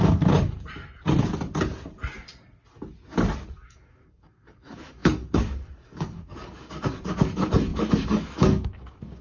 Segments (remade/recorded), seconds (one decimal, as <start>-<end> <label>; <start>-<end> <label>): 0.0-0.7 remade; 0.7-3.5 recorded; 3.5-9.2 remade